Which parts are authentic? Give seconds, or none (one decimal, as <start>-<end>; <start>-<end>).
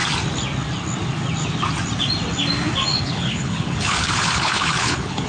0.0-2.9